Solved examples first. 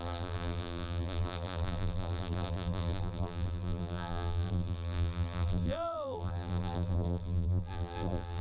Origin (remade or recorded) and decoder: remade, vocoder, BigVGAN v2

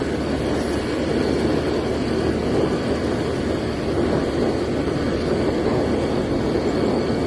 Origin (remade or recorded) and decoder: recorded